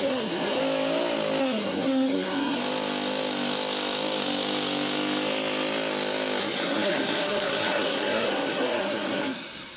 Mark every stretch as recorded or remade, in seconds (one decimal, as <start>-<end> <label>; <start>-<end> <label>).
0.0-0.6 remade; 0.6-1.4 recorded; 1.4-2.6 remade; 2.6-6.4 recorded; 6.4-9.8 remade